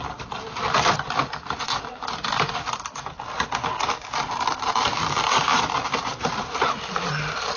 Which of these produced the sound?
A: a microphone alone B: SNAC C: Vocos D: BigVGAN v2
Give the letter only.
D